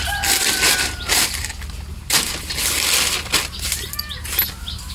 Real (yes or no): yes